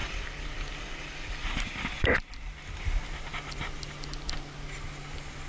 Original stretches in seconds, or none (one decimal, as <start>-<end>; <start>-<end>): 0.0-5.5